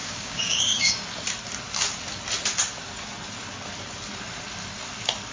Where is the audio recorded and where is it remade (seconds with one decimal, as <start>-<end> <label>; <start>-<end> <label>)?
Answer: 0.0-0.9 remade; 0.9-5.3 recorded